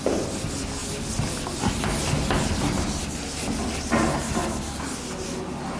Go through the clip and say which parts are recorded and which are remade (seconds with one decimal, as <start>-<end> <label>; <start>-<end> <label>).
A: 0.0-5.8 recorded